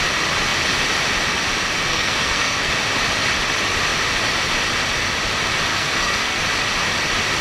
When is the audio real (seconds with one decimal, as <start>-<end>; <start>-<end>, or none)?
0.0-1.9; 2.7-5.7; 6.4-7.4